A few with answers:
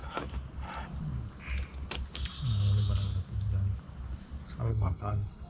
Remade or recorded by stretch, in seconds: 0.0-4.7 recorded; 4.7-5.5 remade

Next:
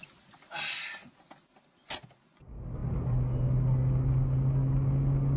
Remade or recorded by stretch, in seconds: 0.0-5.4 recorded

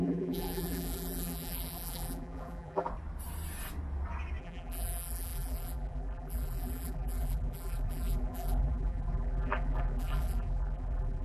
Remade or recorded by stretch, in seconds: 0.0-2.9 remade; 2.9-4.4 recorded; 4.4-11.2 remade